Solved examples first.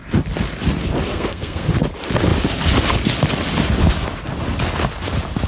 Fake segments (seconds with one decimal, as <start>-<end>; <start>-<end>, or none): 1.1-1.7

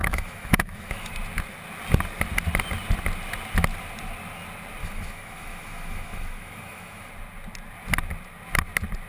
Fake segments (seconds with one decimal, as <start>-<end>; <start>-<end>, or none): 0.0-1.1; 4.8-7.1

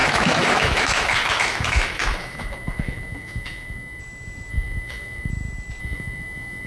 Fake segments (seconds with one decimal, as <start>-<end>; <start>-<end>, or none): 0.0-4.0; 4.5-5.3; 5.8-6.7